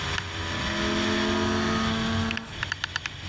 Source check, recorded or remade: recorded